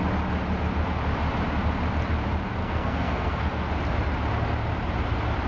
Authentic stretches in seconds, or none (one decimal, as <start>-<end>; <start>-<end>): 0.0-2.6; 3.7-5.5